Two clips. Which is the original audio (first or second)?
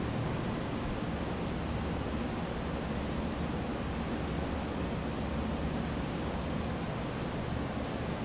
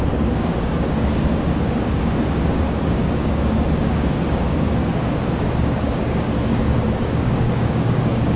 first